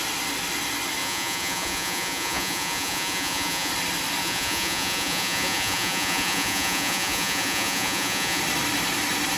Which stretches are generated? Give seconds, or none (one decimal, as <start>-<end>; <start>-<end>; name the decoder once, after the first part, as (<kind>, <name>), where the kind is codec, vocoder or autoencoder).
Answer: 1.0-3.7 (vocoder, Vocos); 4.2-8.4